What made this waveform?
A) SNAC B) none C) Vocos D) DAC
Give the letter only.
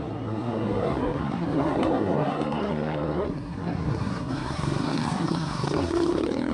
A